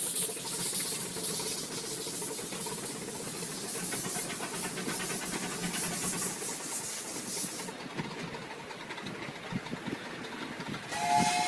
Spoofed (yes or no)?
no